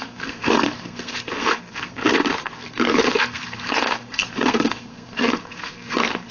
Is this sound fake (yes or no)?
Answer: yes